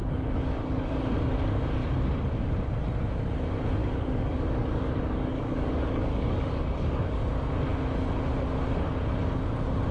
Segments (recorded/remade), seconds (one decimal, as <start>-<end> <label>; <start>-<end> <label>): 0.0-1.0 remade; 1.0-3.8 recorded; 3.8-7.2 remade; 7.2-9.9 recorded